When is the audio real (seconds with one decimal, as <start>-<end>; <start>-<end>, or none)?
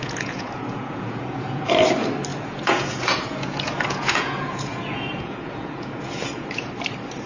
1.7-2.3; 6.7-7.3